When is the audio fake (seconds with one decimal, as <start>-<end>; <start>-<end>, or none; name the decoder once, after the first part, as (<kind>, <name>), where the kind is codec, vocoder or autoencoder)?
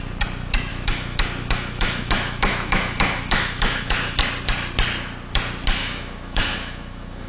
0.7-4.2 (autoencoder, DAC-VAE); 5.8-7.3